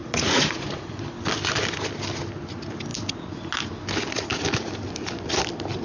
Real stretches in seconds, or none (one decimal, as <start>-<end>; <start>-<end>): 1.0-5.8